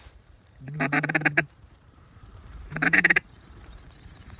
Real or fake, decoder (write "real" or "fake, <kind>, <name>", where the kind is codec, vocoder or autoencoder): fake, vocoder, BigVGAN v2